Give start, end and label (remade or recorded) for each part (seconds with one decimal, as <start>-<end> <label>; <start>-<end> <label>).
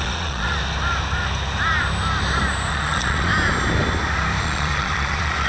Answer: 0.0-0.6 remade; 0.6-2.7 recorded; 2.7-3.3 remade; 3.3-4.4 recorded; 4.4-5.5 remade